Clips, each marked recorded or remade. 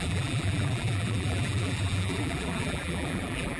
remade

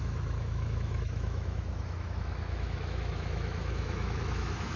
remade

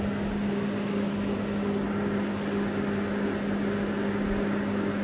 recorded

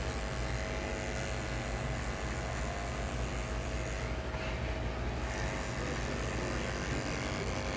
recorded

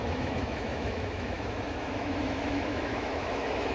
remade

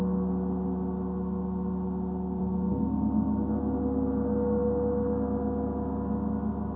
recorded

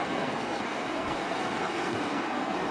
remade